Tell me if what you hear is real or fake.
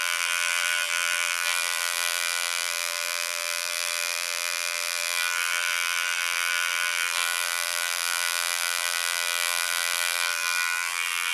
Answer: fake